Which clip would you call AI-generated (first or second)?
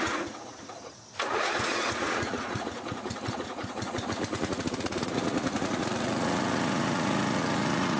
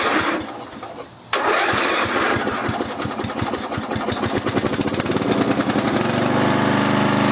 first